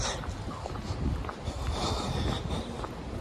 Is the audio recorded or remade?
recorded